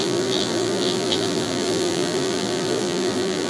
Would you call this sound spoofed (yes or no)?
yes